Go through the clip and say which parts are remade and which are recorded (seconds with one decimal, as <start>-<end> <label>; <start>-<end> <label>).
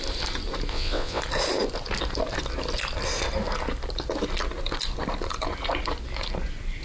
0.0-0.7 recorded; 0.7-1.2 remade; 1.2-6.8 recorded